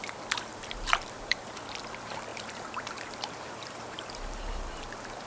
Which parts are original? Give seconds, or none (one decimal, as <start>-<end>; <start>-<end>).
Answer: 0.0-0.5; 1.6-2.3; 4.4-5.3